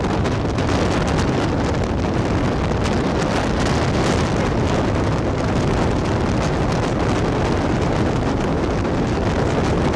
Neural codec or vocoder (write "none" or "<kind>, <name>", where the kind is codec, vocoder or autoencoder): none